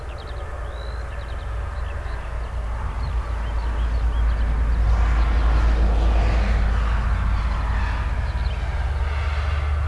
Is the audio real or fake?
real